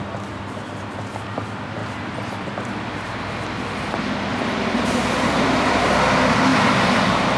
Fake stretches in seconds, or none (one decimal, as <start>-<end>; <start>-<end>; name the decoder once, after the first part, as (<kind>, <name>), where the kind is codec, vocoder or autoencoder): 1.8-2.5 (vocoder, BigVGAN v2); 4.3-5.2; 6.5-7.4